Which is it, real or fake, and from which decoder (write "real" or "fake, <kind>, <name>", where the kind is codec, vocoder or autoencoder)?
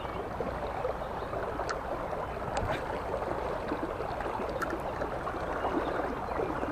real